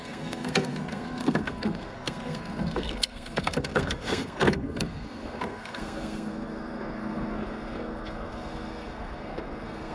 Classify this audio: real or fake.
fake